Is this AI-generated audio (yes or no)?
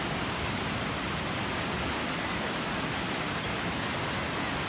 no